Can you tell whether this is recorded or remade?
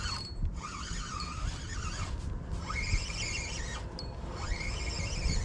recorded